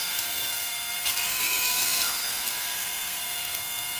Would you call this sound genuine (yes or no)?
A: no